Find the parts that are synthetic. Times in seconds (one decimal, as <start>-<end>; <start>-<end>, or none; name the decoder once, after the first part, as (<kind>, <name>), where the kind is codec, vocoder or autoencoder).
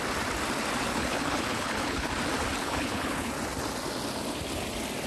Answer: 0.9-2.1 (codec, HILCodec); 2.6-3.3